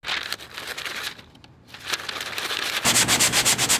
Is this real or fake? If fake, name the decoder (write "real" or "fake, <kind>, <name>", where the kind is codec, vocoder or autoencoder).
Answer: real